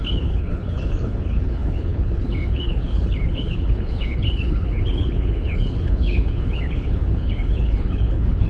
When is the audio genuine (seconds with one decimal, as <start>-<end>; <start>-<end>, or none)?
none